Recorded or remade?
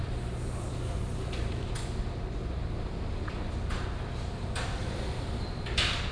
recorded